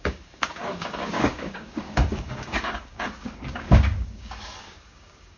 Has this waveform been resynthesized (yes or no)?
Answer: yes